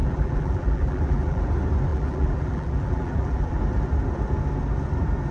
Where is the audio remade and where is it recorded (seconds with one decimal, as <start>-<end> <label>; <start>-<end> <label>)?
0.0-1.4 remade; 1.4-1.9 recorded; 1.9-3.6 remade; 3.6-5.3 recorded